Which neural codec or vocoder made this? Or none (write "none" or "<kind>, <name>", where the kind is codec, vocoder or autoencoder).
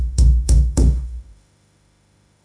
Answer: autoencoder, DAC-VAE